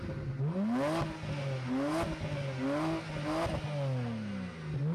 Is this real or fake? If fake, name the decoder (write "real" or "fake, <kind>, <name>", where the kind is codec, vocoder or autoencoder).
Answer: real